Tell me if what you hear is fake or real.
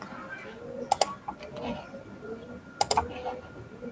real